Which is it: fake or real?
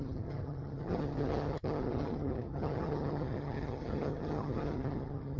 fake